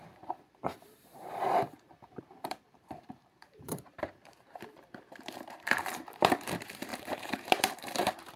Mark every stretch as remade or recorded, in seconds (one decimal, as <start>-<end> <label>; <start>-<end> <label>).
0.0-8.4 remade